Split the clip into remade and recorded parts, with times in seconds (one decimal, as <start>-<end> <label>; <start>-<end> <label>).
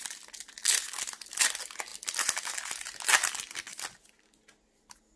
0.0-5.2 recorded